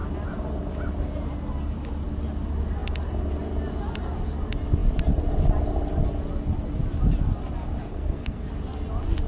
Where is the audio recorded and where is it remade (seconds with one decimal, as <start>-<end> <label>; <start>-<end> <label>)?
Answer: 0.0-7.9 recorded; 7.9-8.5 remade; 8.5-9.3 recorded